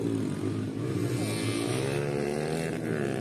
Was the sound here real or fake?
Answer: real